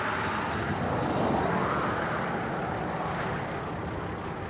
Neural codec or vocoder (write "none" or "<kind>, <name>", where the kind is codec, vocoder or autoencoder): none